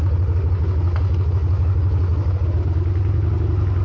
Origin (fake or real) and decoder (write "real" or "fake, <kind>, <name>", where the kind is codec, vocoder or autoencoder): real